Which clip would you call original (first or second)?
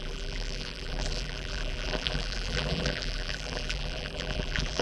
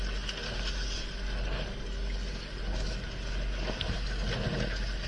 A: second